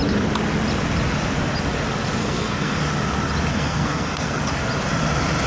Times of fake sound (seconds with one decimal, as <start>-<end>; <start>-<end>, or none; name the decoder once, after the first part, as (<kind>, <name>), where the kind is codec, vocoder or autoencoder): 2.2-2.8 (codec, SNAC); 3.5-4.4